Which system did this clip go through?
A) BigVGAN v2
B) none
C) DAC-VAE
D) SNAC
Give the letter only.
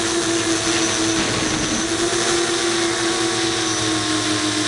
B